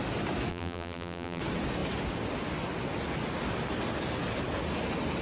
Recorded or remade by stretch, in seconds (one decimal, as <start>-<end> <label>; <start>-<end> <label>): 0.0-0.5 recorded; 0.5-1.4 remade; 1.4-5.2 recorded